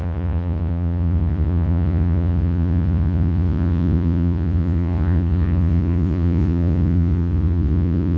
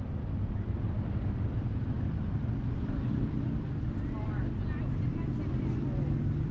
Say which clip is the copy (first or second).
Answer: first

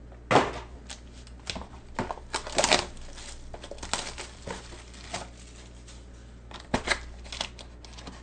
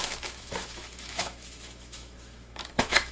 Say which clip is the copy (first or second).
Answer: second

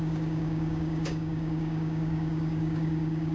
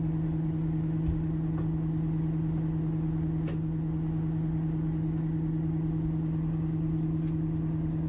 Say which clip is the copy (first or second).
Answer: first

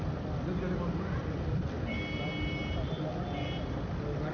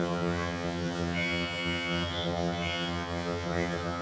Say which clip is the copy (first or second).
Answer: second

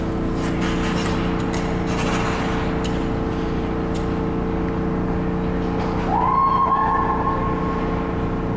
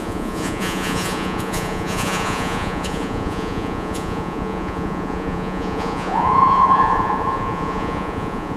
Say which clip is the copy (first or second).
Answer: second